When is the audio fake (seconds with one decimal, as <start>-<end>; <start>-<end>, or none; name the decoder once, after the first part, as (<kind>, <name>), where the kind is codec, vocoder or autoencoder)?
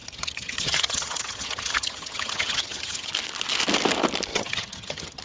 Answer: 0.0-3.1 (vocoder, HiFi-GAN); 4.3-5.2